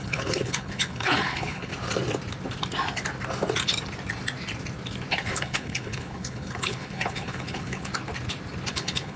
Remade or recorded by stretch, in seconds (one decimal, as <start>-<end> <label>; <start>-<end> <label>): 0.0-1.7 remade; 1.7-5.1 recorded; 5.1-7.9 remade; 7.9-8.7 recorded; 8.7-9.2 remade